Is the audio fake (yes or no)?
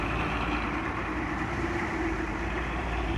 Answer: yes